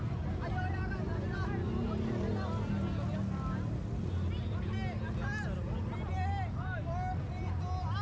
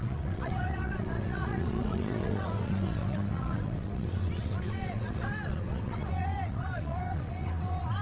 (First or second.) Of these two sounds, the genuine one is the first